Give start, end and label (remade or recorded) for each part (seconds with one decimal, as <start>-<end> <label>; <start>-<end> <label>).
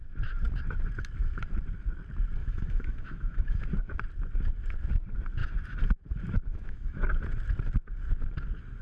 0.0-2.4 recorded; 2.4-3.6 remade; 3.6-6.5 recorded; 6.5-7.1 remade; 7.1-8.8 recorded